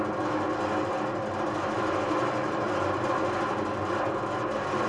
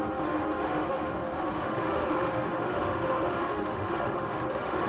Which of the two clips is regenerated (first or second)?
second